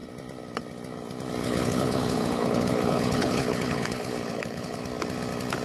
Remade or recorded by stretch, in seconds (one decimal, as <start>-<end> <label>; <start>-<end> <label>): 0.0-1.4 recorded; 1.4-4.8 remade; 4.8-5.6 recorded

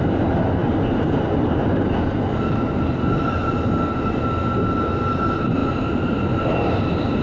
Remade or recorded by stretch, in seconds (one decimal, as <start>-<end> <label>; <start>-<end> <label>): 0.0-7.2 remade

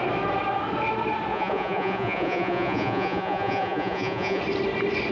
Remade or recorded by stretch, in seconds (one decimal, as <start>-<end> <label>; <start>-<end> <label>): 0.0-1.3 recorded; 1.3-4.4 remade; 4.4-5.1 recorded

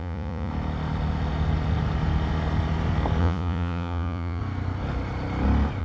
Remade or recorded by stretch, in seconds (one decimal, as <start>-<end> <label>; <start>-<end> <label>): 0.0-0.5 remade; 0.5-3.2 recorded; 3.2-4.4 remade; 4.4-5.8 recorded

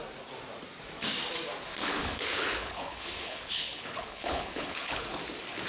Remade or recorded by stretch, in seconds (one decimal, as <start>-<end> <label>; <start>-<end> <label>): 0.0-1.8 recorded; 1.8-5.2 remade; 5.2-5.7 recorded

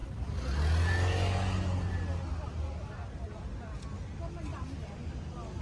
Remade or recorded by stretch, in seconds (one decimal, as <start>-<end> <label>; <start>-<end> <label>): 0.0-4.5 recorded; 4.5-5.1 remade; 5.1-5.6 recorded

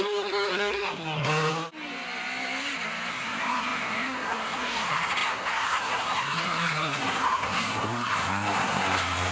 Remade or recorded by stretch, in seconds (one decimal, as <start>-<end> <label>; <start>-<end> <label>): 0.0-1.5 remade; 1.5-3.1 recorded; 3.1-9.3 remade

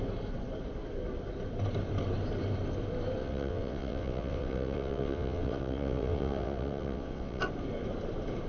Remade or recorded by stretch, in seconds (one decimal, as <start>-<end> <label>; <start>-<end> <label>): 0.0-3.2 recorded; 3.2-7.4 remade; 7.4-8.5 recorded